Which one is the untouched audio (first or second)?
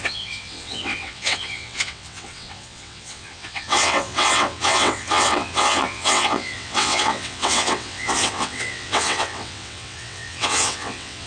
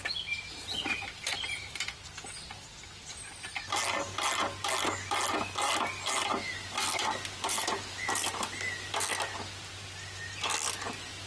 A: second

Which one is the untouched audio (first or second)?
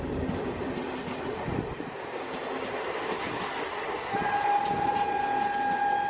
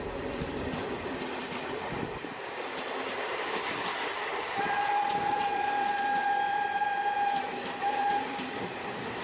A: first